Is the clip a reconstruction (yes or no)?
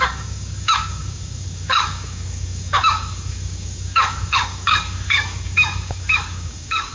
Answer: yes